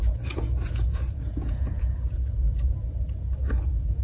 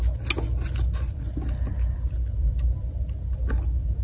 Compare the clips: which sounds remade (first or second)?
first